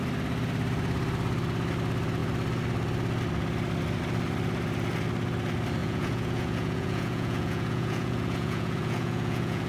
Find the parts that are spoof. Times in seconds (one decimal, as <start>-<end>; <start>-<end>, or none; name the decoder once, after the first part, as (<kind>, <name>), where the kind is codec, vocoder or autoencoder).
5.8-9.7 (vocoder, Vocos)